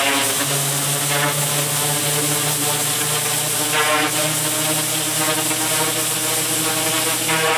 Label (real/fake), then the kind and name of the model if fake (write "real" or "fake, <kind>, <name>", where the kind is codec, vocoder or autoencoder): real